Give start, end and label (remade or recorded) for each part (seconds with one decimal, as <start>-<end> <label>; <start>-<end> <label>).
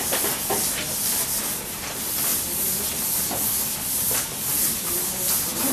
0.0-5.7 recorded